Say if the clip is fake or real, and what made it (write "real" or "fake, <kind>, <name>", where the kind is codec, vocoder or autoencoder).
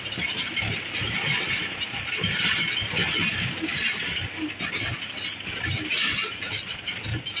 real